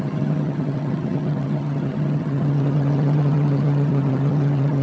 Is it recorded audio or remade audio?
remade